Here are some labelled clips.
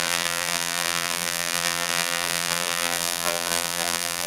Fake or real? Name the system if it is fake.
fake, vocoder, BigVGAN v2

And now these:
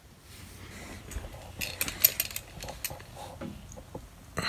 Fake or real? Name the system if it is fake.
real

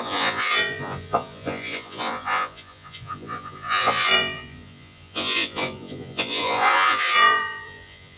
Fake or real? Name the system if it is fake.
fake, vocoder, Vocos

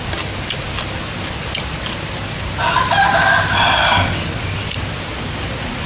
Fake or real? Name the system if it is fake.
real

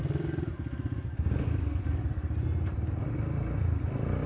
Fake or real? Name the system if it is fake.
fake, vocoder, BigVGAN v2